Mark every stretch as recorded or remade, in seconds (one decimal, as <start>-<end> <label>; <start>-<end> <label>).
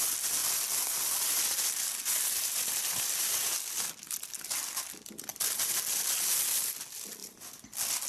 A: 0.0-0.4 recorded; 0.4-3.9 remade; 3.9-5.3 recorded; 5.3-5.9 remade; 5.9-7.2 recorded; 7.2-8.1 remade